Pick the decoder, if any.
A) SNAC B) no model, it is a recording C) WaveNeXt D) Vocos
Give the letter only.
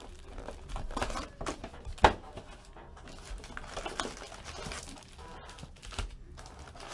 B